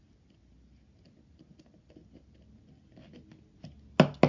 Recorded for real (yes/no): yes